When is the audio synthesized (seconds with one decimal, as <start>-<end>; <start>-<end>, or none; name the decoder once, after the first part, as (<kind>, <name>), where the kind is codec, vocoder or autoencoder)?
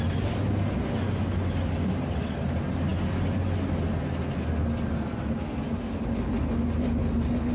none